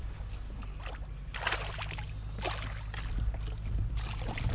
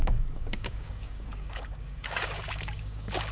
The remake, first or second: second